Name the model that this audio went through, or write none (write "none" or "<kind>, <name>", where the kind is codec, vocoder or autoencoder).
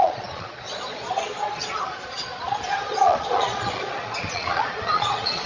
vocoder, Vocos